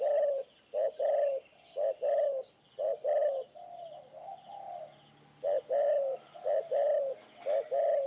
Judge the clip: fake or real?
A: real